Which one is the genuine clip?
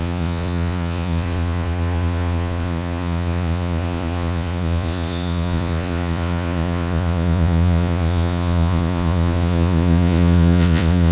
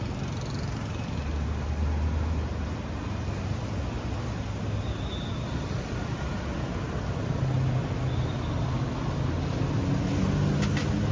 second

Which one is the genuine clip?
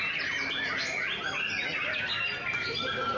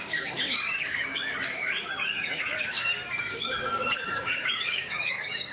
first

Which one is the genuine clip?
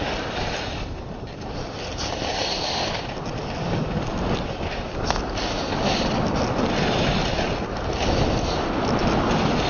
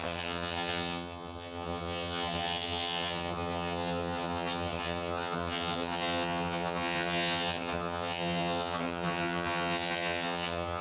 first